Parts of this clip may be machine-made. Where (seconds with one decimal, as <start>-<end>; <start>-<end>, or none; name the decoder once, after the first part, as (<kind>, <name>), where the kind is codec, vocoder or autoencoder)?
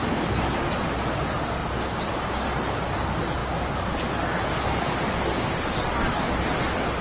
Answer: none